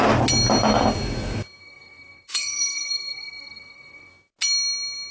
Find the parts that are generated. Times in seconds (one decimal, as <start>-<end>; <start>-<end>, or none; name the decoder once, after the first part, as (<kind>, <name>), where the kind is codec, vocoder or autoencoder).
1.6-4.1 (codec, SNAC)